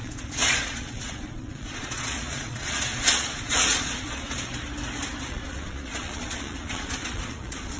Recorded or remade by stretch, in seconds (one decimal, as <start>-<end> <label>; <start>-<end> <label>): 0.0-4.5 remade; 4.5-5.3 recorded; 5.3-7.8 remade